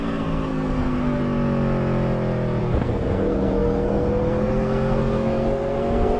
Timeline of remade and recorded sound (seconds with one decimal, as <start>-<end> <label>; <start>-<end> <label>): 0.0-1.2 remade; 1.2-2.6 recorded; 2.6-6.2 remade